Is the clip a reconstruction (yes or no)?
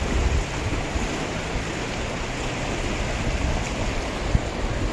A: no